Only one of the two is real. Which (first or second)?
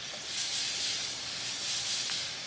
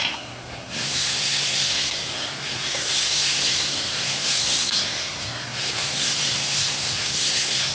first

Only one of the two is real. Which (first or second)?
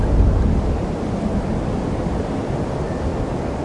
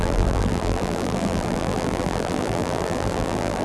first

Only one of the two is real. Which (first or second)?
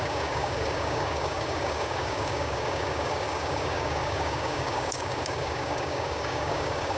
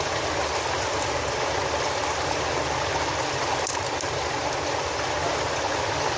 second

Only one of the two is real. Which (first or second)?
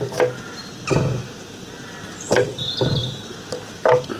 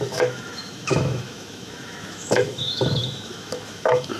first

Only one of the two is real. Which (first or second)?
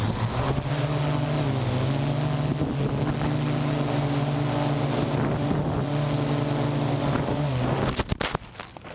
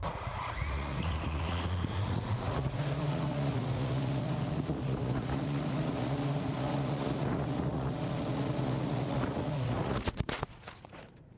first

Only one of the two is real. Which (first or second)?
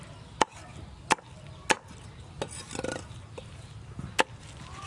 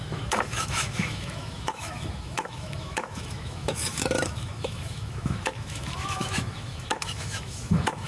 first